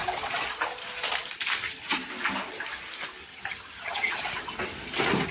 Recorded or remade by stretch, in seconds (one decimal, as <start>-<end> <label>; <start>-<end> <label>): 0.0-3.2 recorded; 3.2-4.1 remade; 4.1-5.3 recorded